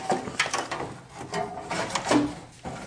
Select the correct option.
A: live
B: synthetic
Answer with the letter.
A